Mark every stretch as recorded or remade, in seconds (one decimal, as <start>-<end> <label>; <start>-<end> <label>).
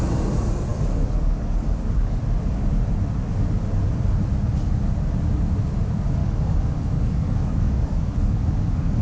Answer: 0.0-0.7 recorded; 0.7-2.2 remade; 2.2-6.2 recorded; 6.2-9.0 remade